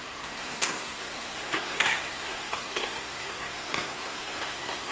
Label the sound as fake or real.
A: fake